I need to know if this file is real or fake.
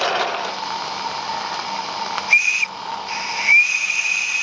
real